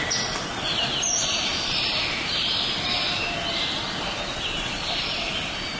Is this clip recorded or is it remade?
recorded